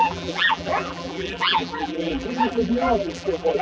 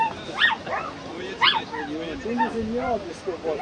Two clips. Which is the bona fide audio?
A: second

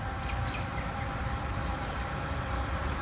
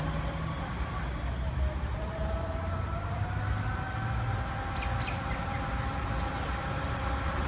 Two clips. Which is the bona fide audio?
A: second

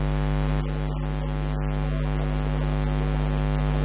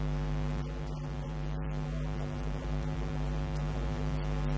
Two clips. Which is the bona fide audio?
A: first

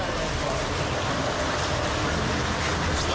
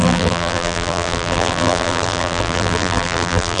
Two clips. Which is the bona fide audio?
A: first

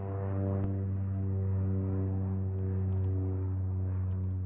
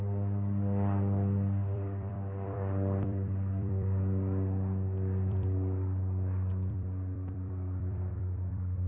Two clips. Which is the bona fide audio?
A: first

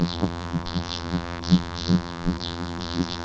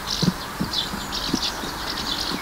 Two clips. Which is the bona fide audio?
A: second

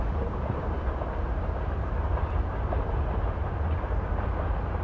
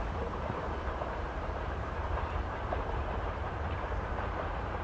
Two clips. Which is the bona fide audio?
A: first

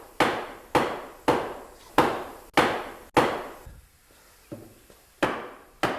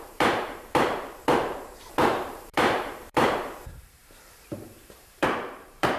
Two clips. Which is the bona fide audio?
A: first